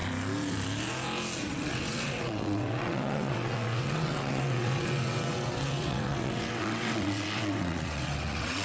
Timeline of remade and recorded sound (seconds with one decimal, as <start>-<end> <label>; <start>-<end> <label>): 0.0-1.4 recorded; 1.4-8.6 remade